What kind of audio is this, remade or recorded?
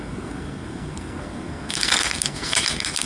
remade